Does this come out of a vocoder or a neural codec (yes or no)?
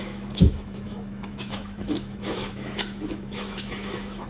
yes